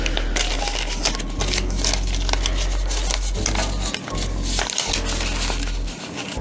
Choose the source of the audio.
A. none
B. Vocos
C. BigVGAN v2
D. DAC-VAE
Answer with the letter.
A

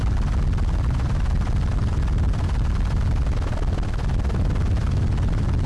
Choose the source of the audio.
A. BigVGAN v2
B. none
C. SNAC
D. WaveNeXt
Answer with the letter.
B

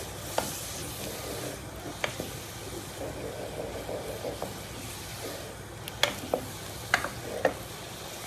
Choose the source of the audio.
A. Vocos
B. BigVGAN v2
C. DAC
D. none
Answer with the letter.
D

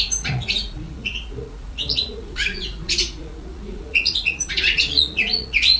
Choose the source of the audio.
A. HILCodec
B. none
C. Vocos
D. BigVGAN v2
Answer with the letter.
C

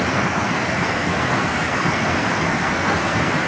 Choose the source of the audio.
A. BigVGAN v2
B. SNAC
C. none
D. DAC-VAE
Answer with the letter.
B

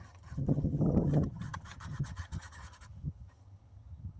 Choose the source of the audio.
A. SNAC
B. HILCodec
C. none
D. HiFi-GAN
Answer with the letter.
D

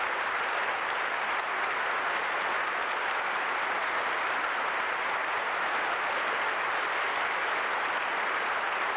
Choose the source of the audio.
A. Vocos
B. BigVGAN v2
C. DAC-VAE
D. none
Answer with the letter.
D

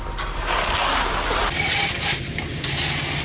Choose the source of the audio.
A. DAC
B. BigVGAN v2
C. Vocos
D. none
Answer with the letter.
D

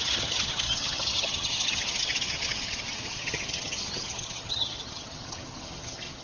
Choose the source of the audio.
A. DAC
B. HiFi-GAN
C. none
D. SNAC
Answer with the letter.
B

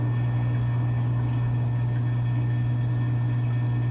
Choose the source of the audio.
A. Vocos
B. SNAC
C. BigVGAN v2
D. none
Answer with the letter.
D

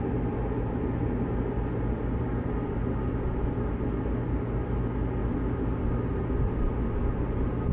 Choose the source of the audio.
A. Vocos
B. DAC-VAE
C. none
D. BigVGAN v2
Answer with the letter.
C